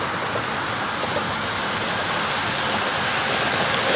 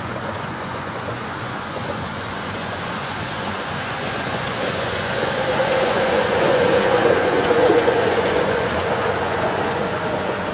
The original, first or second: first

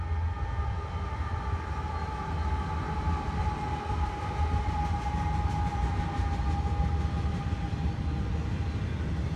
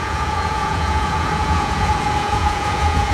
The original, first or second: first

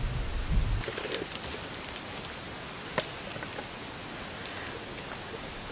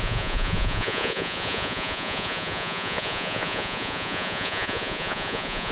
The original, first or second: first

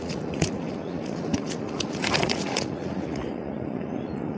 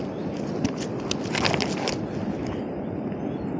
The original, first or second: second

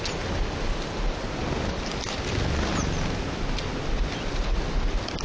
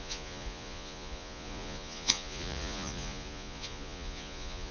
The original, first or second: first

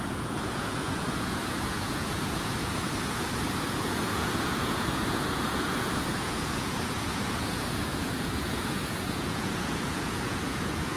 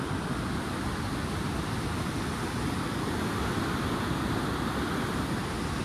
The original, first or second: second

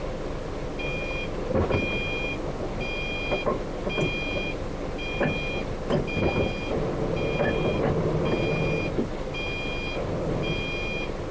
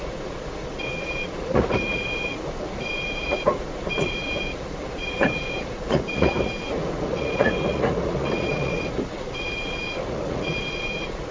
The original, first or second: first